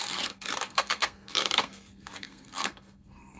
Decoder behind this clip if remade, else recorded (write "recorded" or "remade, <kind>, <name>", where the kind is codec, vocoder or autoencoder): remade, codec, SNAC